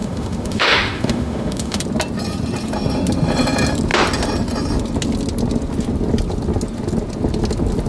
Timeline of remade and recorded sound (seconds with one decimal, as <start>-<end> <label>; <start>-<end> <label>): 0.0-1.8 remade; 1.8-7.9 recorded